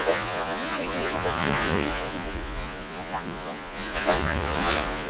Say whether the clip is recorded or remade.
remade